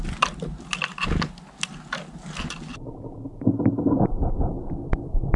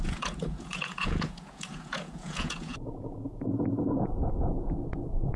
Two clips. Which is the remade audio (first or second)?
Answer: second